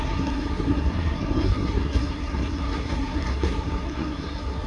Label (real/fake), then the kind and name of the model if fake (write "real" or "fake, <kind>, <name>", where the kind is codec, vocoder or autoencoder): fake, codec, SNAC